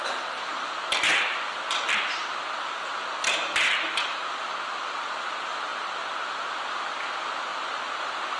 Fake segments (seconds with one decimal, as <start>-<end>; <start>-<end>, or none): none